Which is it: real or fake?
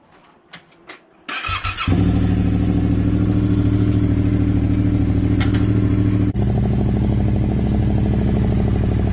real